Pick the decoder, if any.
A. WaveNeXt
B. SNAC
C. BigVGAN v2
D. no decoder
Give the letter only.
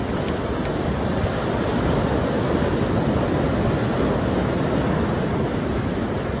D